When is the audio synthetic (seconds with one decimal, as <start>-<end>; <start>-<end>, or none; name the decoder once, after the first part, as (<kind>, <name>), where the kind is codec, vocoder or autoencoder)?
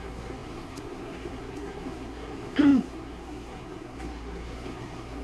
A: 0.0-5.2 (codec, SNAC)